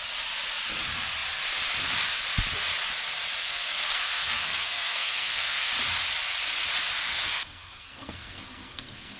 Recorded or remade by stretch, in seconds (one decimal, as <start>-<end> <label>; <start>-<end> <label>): 0.0-3.4 recorded; 3.4-5.7 remade; 5.7-7.1 recorded; 7.1-9.2 remade